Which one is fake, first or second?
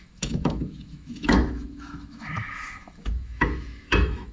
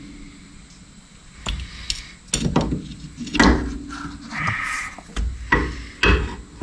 first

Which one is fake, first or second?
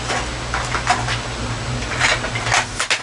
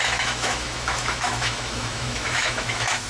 second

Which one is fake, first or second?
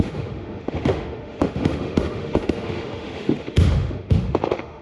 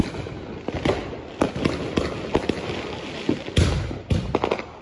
first